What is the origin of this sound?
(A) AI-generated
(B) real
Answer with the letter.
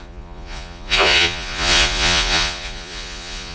A